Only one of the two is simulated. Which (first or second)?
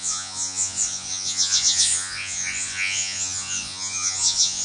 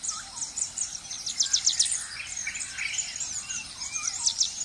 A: first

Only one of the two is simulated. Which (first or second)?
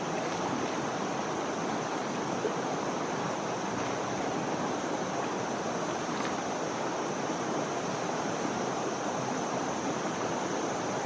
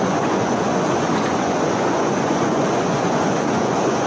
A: second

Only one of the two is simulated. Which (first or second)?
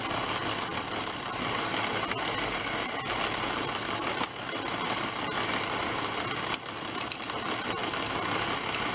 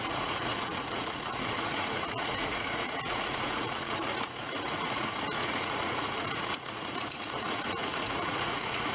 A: second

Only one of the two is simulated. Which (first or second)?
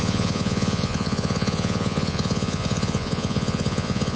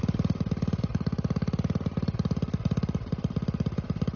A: first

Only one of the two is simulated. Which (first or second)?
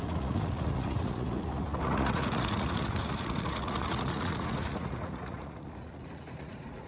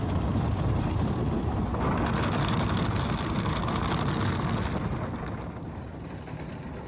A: first